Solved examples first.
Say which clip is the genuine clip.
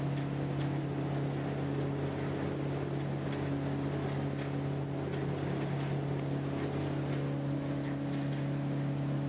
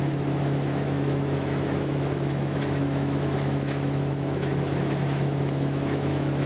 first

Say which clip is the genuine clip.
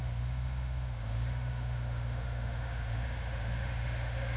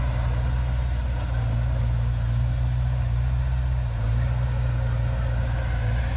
second